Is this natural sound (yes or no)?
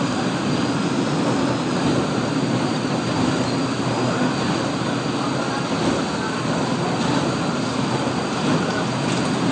yes